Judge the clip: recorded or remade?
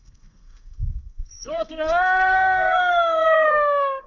remade